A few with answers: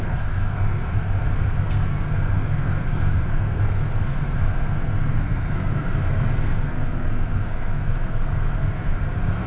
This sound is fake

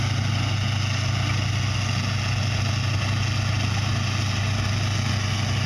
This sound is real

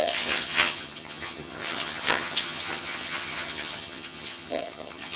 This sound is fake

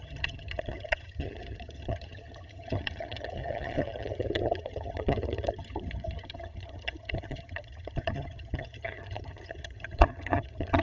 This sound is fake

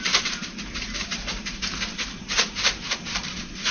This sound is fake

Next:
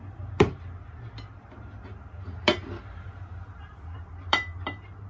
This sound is fake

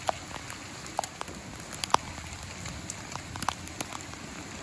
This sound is real